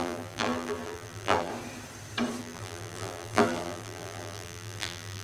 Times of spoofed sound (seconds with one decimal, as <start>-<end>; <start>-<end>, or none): 0.0-1.5; 2.4-5.2